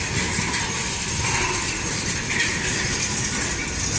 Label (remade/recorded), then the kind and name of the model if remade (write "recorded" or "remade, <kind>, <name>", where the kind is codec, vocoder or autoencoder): recorded